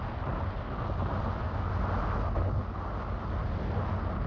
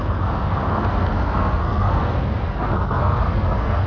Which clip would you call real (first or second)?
first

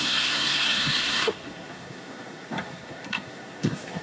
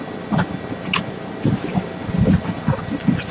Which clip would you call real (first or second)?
second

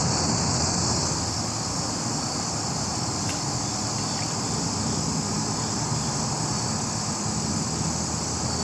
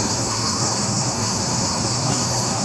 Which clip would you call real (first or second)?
first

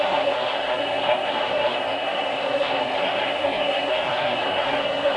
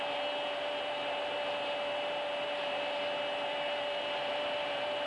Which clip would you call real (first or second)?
second